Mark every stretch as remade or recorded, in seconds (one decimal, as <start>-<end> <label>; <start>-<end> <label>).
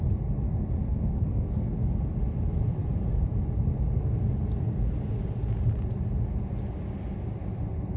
0.0-0.8 recorded; 0.8-1.7 remade; 1.7-8.0 recorded